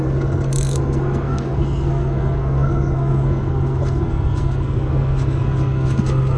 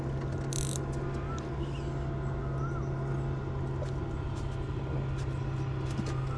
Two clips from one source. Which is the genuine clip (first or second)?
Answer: second